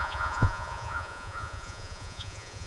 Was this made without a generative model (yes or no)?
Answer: no